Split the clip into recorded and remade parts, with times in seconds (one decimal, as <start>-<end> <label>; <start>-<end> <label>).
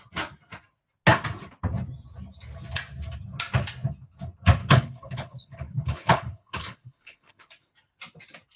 0.0-4.6 recorded; 4.6-7.5 remade; 7.5-8.6 recorded